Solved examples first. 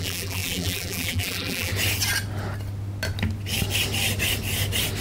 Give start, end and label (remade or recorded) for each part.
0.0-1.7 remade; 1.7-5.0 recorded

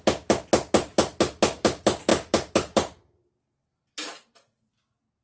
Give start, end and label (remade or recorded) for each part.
0.0-5.2 recorded

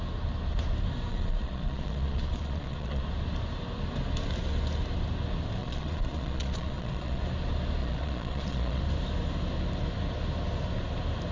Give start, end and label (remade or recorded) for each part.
0.0-1.1 recorded; 1.1-3.0 remade; 3.0-5.6 recorded; 5.6-7.2 remade; 7.2-7.8 recorded; 7.8-8.8 remade; 8.8-11.3 recorded